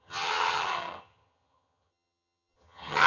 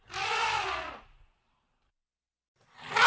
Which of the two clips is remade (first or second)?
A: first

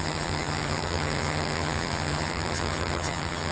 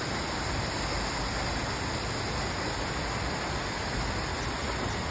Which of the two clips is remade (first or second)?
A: first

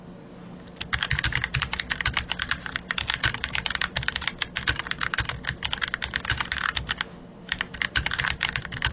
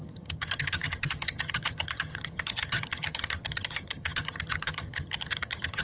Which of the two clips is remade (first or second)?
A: second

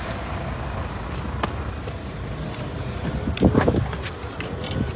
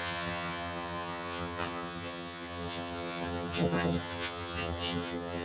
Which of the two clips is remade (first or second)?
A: second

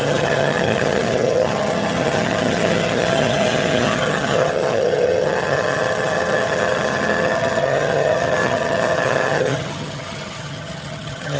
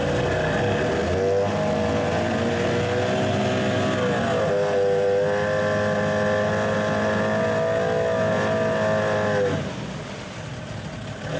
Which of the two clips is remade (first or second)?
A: first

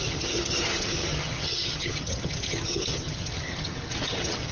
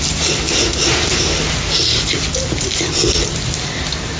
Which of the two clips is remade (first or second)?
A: first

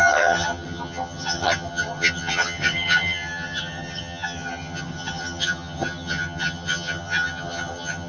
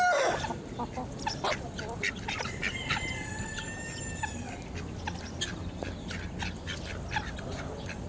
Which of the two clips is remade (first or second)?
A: first